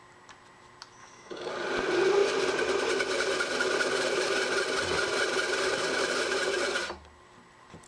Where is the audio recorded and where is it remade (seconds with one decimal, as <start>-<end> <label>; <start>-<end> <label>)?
0.0-1.0 recorded; 1.0-1.5 remade; 1.5-7.9 recorded